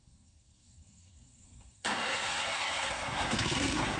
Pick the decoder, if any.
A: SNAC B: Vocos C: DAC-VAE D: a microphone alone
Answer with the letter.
A